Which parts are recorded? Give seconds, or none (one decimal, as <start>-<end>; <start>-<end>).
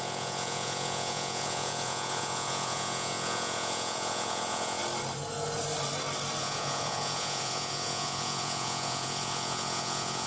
4.8-6.4